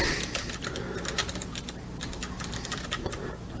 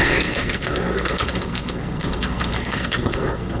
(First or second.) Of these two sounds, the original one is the first